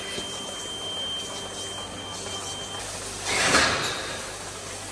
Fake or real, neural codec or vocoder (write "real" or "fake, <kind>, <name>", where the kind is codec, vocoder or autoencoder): real